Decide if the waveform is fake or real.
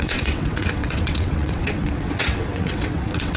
fake